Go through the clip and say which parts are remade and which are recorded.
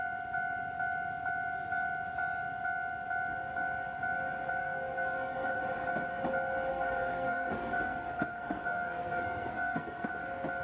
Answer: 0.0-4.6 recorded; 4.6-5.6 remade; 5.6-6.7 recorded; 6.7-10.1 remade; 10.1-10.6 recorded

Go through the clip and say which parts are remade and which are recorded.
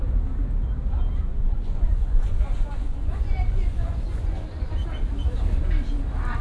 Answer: 0.0-1.3 recorded; 1.3-4.7 remade; 4.7-6.4 recorded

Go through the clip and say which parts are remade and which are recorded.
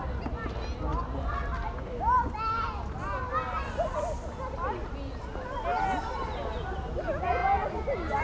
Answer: 0.0-8.2 recorded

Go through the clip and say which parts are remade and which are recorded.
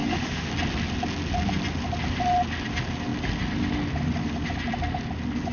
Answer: 0.0-0.5 remade; 0.5-5.5 recorded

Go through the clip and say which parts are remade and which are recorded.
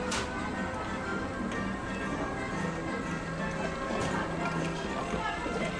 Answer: 0.0-5.8 recorded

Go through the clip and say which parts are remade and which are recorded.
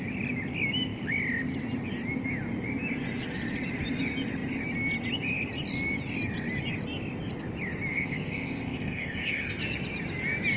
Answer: 0.0-7.9 recorded; 7.9-9.6 remade; 9.6-10.6 recorded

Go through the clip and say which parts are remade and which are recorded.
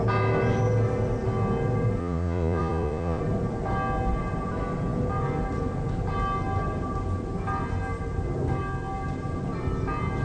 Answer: 0.0-2.0 recorded; 2.0-3.2 remade; 3.2-10.2 recorded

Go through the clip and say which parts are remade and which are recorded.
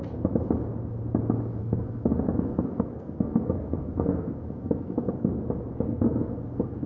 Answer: 0.0-1.6 recorded; 1.6-5.3 remade; 5.3-5.9 recorded; 5.9-6.9 remade